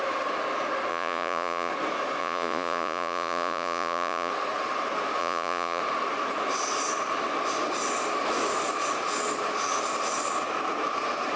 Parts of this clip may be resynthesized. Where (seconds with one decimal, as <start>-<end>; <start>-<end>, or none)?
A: 0.9-1.7; 2.2-4.3; 5.2-5.8